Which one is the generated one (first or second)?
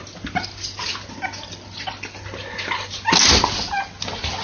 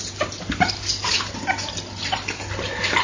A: second